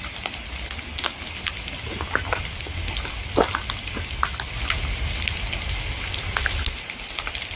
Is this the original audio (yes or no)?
yes